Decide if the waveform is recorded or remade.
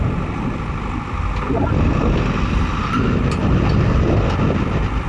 recorded